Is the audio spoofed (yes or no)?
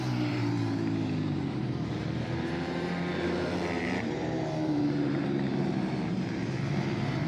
yes